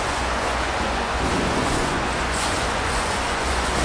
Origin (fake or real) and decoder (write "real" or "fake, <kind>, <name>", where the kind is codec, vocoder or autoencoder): fake, vocoder, Vocos